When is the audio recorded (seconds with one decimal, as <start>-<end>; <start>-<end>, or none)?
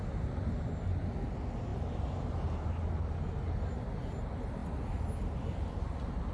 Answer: 0.0-1.7; 2.7-6.3